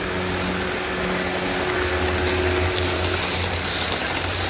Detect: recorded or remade recorded